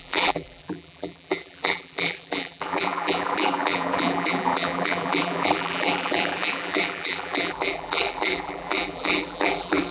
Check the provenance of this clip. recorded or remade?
remade